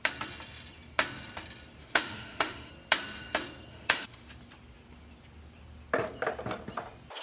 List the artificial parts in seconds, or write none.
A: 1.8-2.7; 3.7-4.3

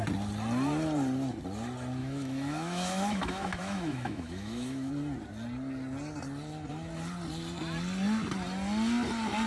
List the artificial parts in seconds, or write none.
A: 2.0-4.9